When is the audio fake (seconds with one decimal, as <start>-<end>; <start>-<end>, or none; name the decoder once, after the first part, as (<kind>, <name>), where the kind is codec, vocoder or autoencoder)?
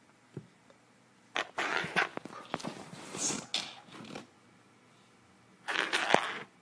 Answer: 0.0-2.1 (vocoder, BigVGAN v2); 2.7-3.5